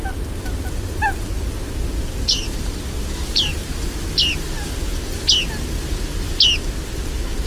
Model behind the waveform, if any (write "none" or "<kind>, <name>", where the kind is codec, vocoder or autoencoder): none